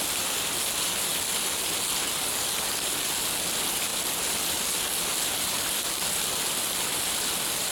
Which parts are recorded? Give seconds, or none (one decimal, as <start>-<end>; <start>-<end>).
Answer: 0.0-7.7